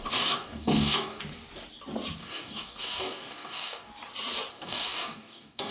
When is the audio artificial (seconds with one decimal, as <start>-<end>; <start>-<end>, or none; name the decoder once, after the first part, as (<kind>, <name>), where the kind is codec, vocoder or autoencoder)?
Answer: 0.0-1.2 (codec, DAC); 2.2-3.9; 4.5-5.7